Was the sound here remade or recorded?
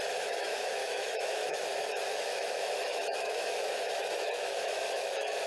remade